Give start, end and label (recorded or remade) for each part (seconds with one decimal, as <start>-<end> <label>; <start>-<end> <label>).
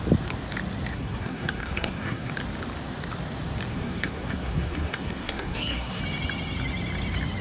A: 0.0-0.9 recorded; 0.9-2.3 remade; 2.3-3.7 recorded; 3.7-6.0 remade; 6.0-7.4 recorded